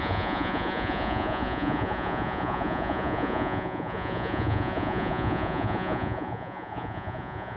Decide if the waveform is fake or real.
fake